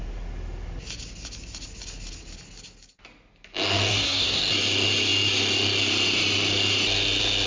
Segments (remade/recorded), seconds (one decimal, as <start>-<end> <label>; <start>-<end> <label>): 0.0-3.9 recorded; 3.9-4.4 remade; 4.4-7.5 recorded